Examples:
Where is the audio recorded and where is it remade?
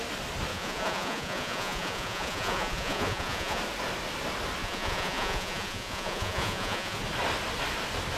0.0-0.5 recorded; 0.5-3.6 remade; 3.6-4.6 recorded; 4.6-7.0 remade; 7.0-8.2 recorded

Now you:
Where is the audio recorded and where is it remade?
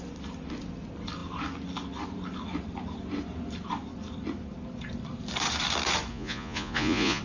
0.0-6.1 recorded; 6.1-7.2 remade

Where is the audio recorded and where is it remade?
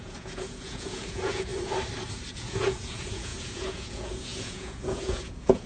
0.0-1.5 remade; 1.5-2.3 recorded; 2.3-5.7 remade